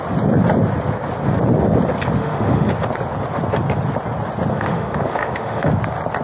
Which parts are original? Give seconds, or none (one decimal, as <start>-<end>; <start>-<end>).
0.0-2.2; 2.7-4.5; 5.7-6.2